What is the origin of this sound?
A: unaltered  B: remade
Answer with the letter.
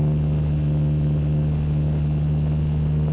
A